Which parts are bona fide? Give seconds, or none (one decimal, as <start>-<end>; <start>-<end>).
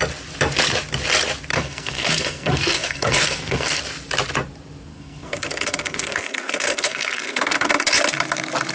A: 0.0-1.5; 3.8-4.9; 7.7-8.7